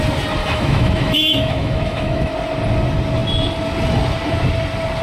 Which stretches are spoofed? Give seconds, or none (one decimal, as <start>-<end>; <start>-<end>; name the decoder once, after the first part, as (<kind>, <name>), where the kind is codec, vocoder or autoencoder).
0.4-2.3 (autoencoder, DAC-VAE)